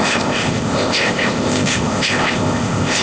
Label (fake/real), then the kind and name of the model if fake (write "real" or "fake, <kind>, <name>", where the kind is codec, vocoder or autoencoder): fake, codec, ZipCodec